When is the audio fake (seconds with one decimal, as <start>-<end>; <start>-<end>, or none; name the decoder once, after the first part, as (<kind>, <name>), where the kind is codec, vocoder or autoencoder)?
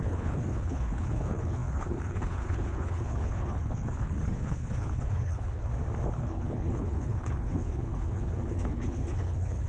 0.0-5.7 (codec, HILCodec); 6.2-9.7